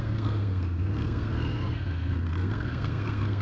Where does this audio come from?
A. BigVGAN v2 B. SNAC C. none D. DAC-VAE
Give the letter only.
B